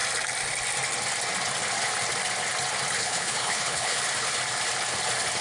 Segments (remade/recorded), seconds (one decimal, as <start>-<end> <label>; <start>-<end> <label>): 0.0-3.0 recorded; 3.0-4.0 remade; 4.0-5.4 recorded